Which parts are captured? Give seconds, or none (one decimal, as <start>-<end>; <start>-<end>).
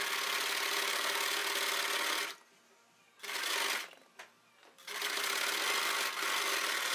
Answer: 0.0-6.9